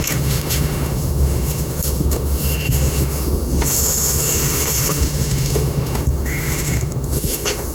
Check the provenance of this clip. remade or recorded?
remade